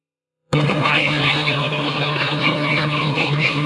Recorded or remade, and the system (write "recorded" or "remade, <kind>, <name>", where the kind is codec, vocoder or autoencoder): remade, codec, SNAC